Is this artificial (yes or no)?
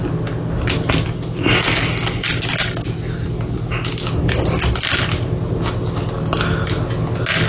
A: no